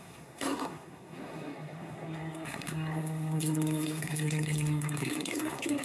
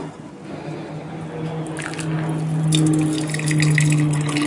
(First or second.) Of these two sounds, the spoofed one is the first